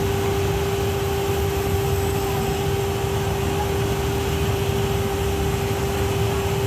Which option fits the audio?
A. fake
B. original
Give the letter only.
B